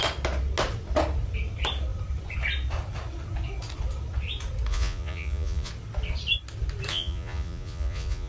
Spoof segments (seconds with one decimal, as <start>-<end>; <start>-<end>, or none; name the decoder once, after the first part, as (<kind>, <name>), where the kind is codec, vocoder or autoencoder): 4.7-5.7 (vocoder, Vocos); 6.9-8.3